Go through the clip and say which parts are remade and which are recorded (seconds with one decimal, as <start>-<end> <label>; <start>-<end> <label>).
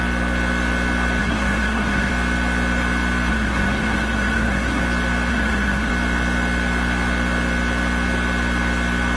0.0-1.2 recorded; 1.2-2.1 remade; 2.1-3.3 recorded; 3.3-4.8 remade; 4.8-5.3 recorded; 5.3-5.9 remade; 5.9-9.2 recorded